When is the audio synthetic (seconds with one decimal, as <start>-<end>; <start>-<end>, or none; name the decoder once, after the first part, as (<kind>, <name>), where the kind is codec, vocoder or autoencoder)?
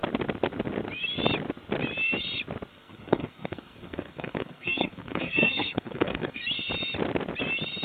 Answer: 2.7-6.4 (codec, SNAC)